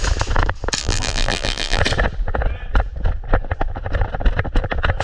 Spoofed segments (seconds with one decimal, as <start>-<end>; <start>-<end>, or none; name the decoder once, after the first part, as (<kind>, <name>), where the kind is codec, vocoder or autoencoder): 0.8-1.8 (vocoder, BigVGAN v2)